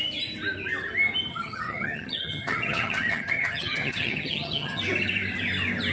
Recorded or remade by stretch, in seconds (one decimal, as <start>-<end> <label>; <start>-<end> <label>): 0.0-1.3 recorded; 1.3-4.8 remade; 4.8-5.9 recorded